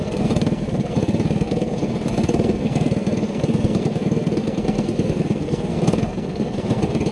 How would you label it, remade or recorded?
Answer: remade